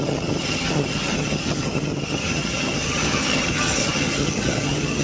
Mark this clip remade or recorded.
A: remade